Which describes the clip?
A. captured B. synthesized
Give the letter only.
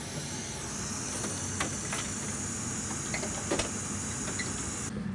A